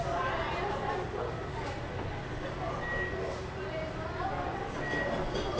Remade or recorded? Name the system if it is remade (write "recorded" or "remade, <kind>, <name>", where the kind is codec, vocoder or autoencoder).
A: recorded